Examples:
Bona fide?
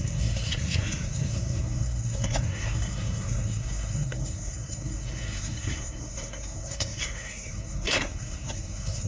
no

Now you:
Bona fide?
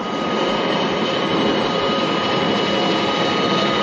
yes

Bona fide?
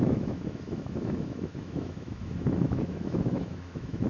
no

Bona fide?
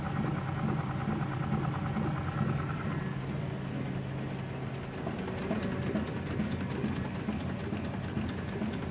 yes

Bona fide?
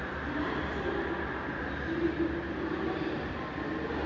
yes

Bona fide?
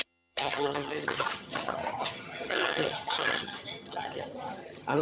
no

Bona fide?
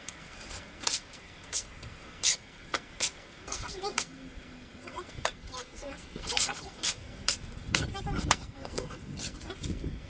no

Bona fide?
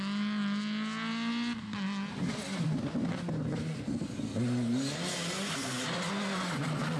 yes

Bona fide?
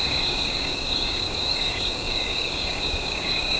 no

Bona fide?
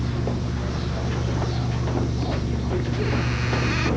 yes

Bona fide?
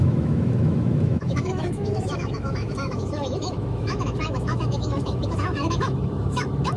no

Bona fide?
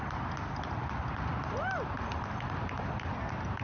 yes